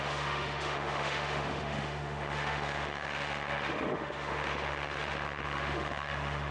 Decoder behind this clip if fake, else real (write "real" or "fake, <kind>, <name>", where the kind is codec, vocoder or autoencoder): fake, autoencoder, DAC-VAE